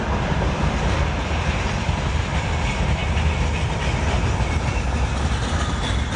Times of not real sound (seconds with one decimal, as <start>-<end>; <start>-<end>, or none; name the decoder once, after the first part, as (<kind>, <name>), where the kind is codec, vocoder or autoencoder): none